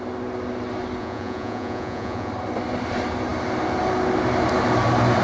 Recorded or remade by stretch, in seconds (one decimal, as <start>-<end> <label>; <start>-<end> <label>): 0.0-1.0 recorded; 1.0-2.3 remade; 2.3-5.2 recorded